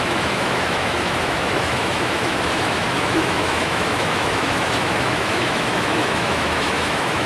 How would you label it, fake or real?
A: fake